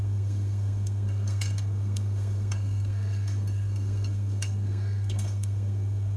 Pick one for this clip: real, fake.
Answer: fake